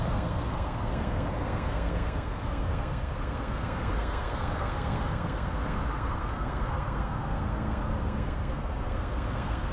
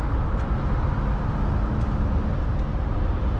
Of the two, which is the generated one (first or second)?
first